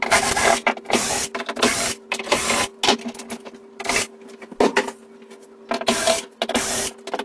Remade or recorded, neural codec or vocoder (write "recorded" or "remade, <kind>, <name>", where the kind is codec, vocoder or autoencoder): recorded